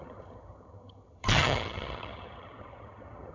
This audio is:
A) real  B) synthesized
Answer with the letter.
B